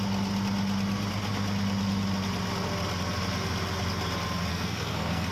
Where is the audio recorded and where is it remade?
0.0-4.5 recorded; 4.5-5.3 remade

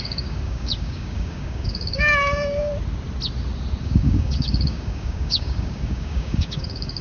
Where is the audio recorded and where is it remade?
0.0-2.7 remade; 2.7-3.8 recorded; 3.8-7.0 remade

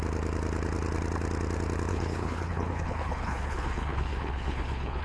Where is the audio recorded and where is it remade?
0.0-1.9 recorded; 1.9-5.0 remade

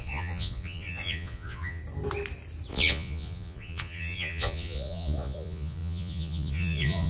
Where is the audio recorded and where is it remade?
0.0-1.8 remade; 1.8-2.7 recorded; 2.7-7.1 remade

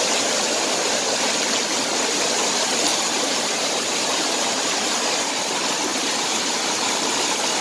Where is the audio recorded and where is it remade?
0.0-2.9 recorded; 2.9-5.4 remade; 5.4-7.6 recorded